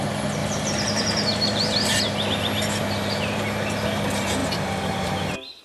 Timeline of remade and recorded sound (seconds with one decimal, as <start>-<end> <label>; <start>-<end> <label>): 0.0-0.4 recorded; 0.4-1.9 remade; 1.9-4.4 recorded; 4.4-5.6 remade